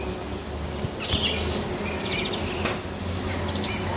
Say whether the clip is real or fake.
real